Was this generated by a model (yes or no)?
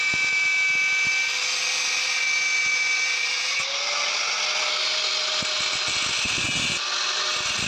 no